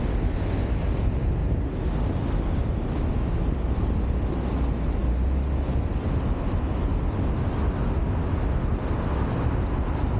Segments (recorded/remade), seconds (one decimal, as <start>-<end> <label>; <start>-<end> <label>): 0.0-10.2 recorded